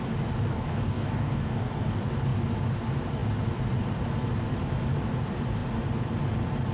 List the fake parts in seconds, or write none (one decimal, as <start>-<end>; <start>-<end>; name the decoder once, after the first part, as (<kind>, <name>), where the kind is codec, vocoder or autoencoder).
0.5-1.8 (codec, DAC)